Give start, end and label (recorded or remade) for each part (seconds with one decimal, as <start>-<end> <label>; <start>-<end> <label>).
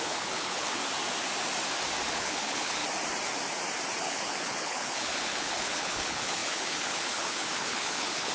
0.0-0.8 remade; 0.8-2.1 recorded; 2.1-2.8 remade; 2.8-4.0 recorded; 4.0-8.3 remade